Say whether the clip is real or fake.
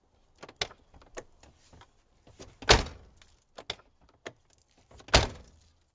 real